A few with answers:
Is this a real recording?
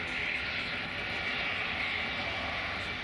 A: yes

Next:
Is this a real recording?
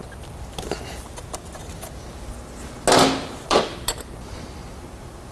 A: yes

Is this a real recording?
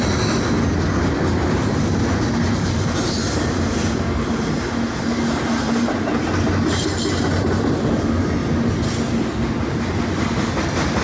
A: yes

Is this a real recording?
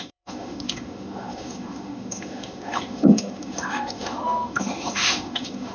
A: no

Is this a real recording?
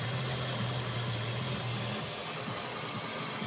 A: yes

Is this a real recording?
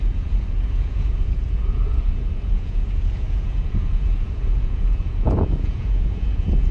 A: no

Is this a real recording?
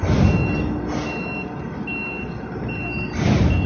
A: yes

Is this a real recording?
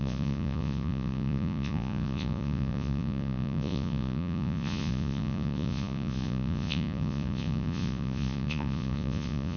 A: no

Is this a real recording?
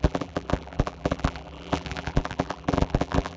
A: no